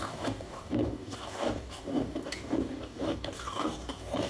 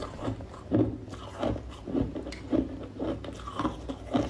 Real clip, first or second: second